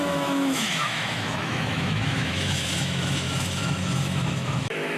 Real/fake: fake